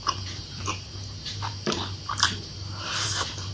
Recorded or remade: remade